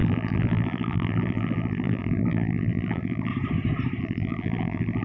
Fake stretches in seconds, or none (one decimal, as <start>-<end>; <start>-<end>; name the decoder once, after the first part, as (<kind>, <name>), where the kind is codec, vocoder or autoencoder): 0.0-3.3 (vocoder, BigVGAN v2); 4.0-5.0